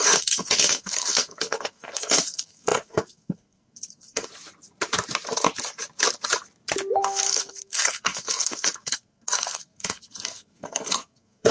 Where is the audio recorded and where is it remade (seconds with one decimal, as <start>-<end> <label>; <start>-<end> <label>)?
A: 0.0-4.3 remade; 4.3-7.0 recorded; 7.0-11.5 remade